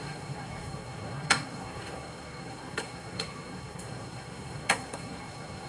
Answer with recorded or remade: remade